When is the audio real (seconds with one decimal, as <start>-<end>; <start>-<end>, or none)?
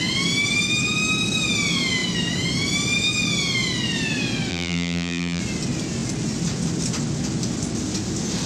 0.0-4.5; 5.4-8.5